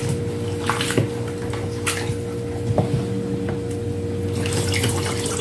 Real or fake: real